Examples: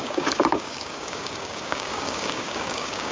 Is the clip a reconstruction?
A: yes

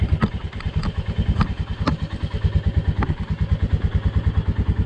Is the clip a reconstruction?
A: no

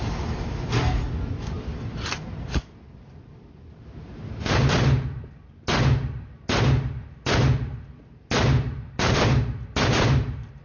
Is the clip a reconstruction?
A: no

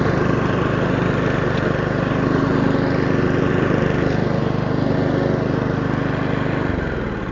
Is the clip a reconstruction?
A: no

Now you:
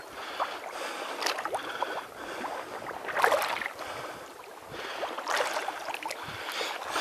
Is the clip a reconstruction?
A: no